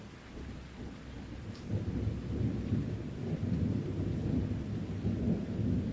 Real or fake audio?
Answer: real